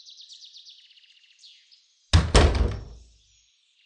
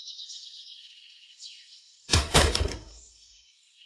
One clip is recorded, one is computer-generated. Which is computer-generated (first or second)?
second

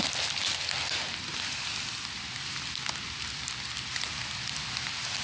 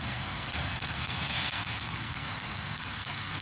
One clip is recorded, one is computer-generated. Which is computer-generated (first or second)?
second